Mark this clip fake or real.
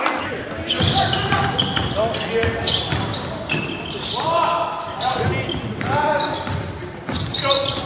real